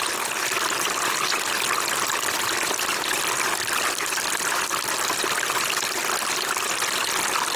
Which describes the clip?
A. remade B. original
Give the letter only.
B